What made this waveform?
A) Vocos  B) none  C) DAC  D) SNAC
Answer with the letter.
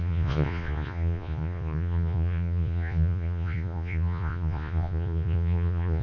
A